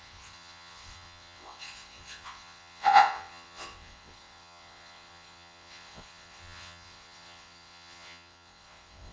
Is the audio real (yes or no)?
no